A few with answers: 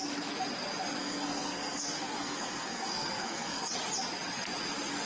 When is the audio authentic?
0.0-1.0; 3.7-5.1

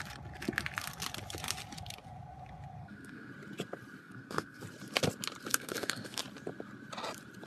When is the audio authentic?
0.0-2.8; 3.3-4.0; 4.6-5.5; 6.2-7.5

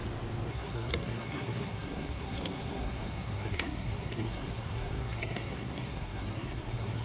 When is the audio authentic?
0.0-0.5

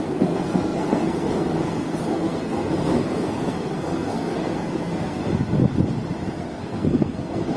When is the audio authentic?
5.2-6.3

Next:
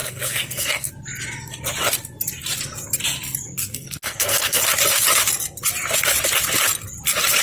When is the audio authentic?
0.9-3.6; 4.6-7.4